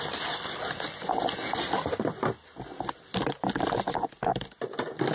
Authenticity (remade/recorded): recorded